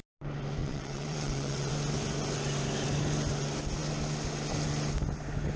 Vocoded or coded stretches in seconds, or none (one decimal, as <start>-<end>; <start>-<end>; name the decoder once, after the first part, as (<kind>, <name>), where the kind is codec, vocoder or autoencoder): 0.6-1.7 (vocoder, WaveNeXt)